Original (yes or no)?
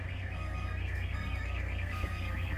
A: no